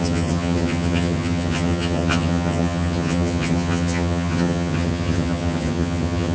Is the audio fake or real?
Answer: fake